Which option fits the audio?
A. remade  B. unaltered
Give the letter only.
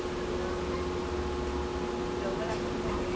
B